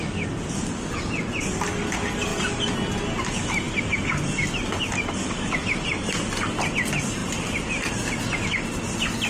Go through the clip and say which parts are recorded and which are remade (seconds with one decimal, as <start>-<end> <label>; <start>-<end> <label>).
0.0-9.3 recorded